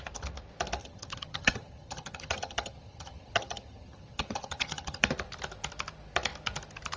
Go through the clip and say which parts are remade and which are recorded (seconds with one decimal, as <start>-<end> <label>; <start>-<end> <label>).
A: 0.0-0.8 recorded; 0.8-5.0 remade; 5.0-7.0 recorded